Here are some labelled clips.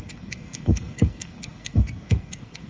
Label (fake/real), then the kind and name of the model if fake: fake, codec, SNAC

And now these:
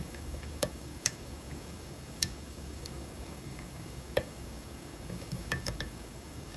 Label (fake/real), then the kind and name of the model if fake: fake, codec, DAC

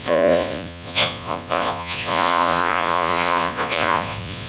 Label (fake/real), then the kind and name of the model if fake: fake, vocoder, Vocos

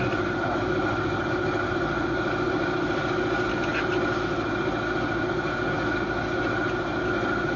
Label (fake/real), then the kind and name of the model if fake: real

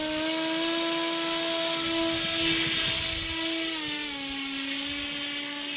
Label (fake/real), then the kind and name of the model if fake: real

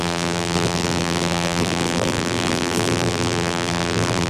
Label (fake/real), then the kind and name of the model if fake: fake, vocoder, BigVGAN v2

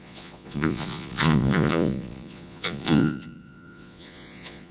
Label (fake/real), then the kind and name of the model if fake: fake, vocoder, Vocos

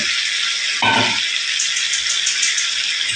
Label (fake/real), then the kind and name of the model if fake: real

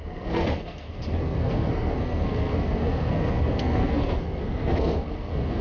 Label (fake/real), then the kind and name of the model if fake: fake, codec, SNAC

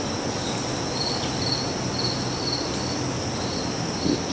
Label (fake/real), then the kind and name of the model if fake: real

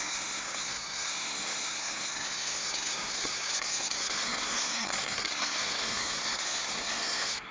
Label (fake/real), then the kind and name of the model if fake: fake, codec, SNAC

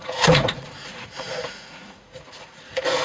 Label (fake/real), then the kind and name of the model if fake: fake, vocoder, Vocos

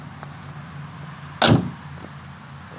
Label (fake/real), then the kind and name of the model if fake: real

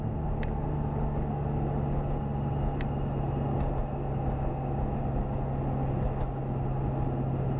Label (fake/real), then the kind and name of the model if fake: real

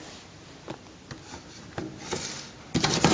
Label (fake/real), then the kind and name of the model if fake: real